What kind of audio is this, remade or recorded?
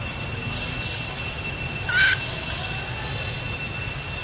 recorded